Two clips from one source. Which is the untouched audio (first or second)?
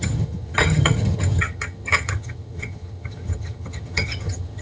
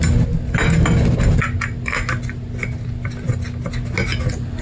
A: second